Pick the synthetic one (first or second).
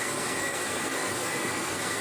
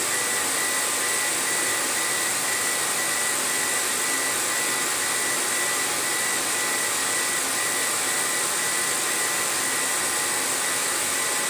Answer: first